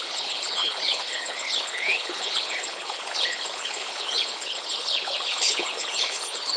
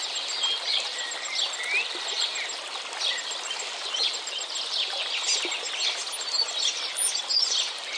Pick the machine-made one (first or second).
first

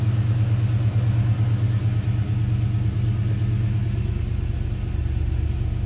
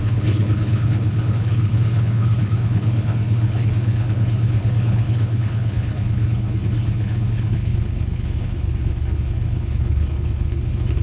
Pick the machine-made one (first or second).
second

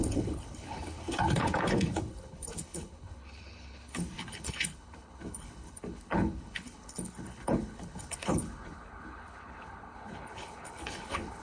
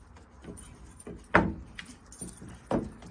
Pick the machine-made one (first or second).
first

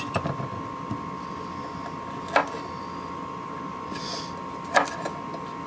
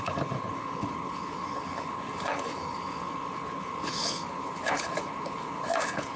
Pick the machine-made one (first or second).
second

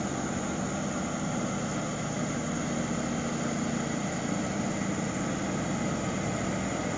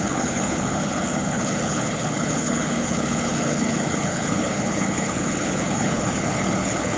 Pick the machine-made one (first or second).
second